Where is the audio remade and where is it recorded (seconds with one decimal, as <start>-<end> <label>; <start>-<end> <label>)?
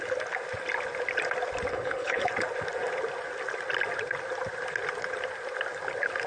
0.0-1.7 recorded; 1.7-2.3 remade; 2.3-6.3 recorded